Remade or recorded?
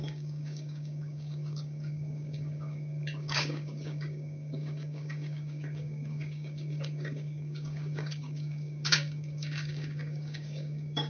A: remade